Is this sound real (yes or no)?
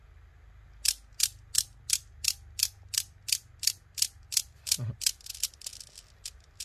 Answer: yes